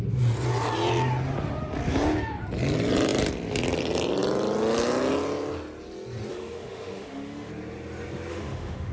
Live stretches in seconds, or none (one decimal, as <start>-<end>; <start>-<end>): 0.0-6.3; 7.5-8.3